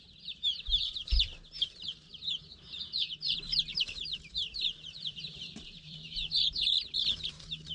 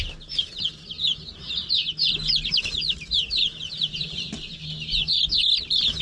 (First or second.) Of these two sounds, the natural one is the second